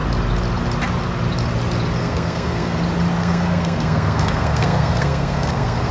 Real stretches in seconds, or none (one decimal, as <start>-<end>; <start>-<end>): 0.0-2.0; 2.8-3.2

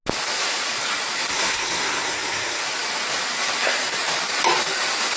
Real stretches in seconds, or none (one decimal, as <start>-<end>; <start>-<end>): 0.0-1.3; 2.6-5.2

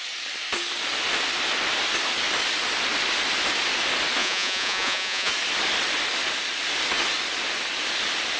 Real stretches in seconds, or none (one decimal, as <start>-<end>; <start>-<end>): 0.0-4.2; 5.3-8.4

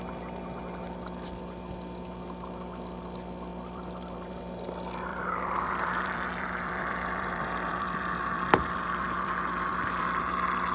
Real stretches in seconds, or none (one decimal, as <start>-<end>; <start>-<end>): 0.0-3.5; 4.4-5.1; 10.2-10.7

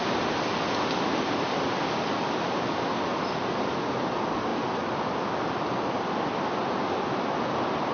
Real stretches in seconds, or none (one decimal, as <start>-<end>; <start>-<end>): 0.0-7.9

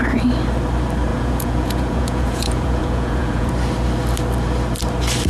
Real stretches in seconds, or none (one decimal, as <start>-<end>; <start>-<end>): 0.0-1.1; 3.5-5.3